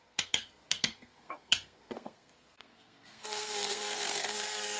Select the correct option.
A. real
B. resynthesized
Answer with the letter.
B